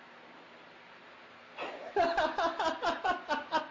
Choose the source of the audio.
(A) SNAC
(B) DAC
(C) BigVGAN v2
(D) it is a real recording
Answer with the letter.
D